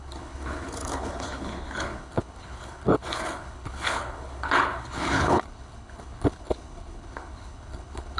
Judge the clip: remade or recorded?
remade